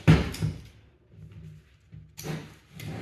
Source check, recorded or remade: recorded